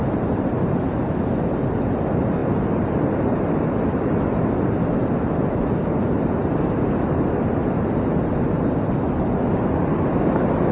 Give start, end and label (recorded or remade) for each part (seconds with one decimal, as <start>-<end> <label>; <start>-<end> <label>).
0.0-10.7 recorded